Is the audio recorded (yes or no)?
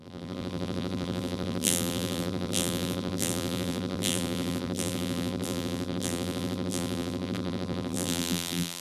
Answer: no